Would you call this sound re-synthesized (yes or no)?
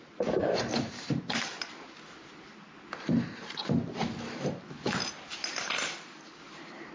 no